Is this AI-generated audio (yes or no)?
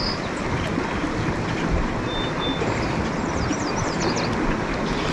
no